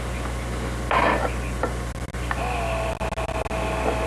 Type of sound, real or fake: real